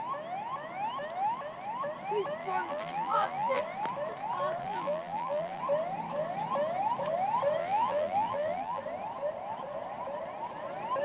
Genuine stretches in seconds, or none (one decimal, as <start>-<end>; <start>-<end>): 0.0-2.4; 3.6-4.6; 5.6-7.6; 8.8-11.0